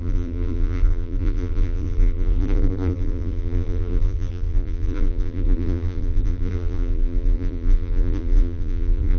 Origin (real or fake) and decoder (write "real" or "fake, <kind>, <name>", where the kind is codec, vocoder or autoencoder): fake, vocoder, BigVGAN v2